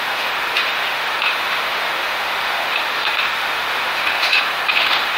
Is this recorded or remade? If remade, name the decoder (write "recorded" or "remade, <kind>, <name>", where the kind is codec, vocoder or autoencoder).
remade, autoencoder, DAC-VAE